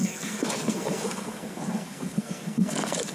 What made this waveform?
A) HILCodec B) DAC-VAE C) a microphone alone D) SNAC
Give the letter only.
D